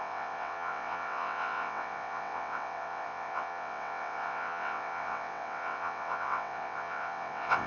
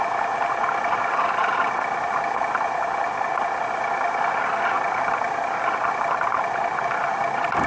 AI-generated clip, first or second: first